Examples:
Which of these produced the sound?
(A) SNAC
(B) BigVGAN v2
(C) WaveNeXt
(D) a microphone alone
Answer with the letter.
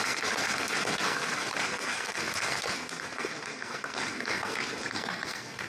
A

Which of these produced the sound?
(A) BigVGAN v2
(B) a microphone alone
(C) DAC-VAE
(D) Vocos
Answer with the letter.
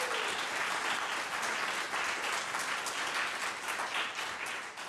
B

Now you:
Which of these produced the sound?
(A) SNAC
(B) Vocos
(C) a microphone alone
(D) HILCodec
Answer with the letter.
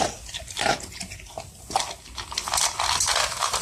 C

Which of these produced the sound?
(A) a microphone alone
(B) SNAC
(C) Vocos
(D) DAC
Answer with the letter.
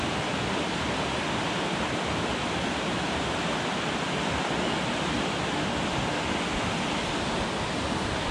A